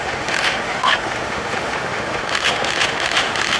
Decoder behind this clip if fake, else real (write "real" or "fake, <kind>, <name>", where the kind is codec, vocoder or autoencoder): fake, autoencoder, DAC-VAE